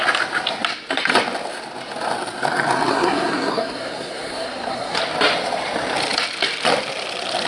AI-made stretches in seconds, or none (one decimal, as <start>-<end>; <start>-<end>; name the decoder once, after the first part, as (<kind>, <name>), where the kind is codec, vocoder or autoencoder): 2.9-5.0 (codec, SNAC)